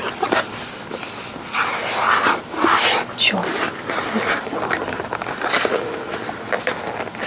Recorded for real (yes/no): yes